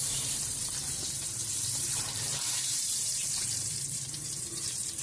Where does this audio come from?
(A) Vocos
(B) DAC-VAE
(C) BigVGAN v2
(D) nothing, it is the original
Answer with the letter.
C